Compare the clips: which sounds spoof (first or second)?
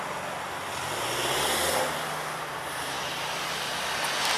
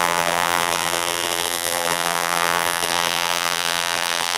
second